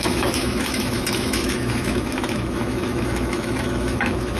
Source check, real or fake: fake